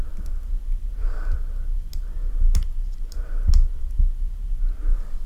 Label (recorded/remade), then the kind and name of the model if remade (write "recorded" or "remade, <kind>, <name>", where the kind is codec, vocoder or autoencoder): recorded